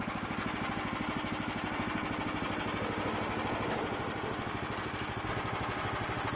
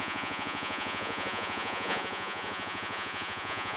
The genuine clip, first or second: first